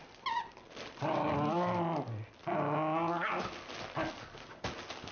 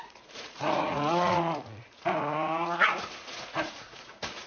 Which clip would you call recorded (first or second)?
first